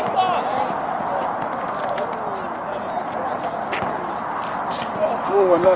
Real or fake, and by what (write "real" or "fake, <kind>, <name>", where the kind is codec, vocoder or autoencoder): real